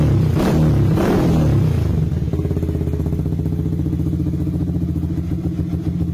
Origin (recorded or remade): recorded